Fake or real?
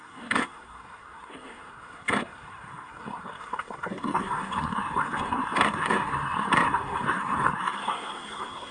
fake